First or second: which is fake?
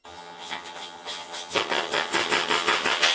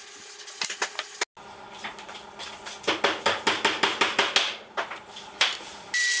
first